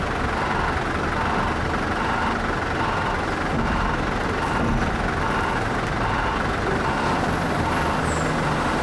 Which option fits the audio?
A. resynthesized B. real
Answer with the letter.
B